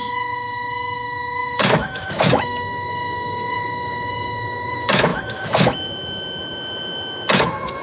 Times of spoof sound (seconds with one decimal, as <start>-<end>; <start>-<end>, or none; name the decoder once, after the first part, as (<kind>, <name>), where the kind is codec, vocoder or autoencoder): 0.0-7.8 (autoencoder, DAC-VAE)